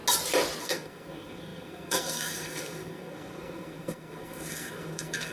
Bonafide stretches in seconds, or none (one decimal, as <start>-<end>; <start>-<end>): 0.0-0.6